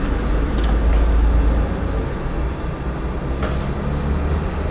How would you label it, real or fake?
real